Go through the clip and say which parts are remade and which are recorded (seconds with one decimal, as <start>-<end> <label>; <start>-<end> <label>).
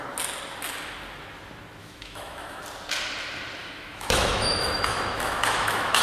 0.0-1.8 recorded; 1.8-2.6 remade; 2.6-3.6 recorded; 3.6-6.0 remade